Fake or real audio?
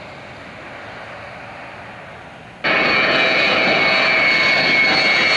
real